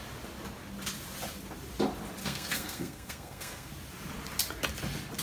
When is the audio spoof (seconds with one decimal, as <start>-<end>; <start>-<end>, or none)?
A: 2.2-3.7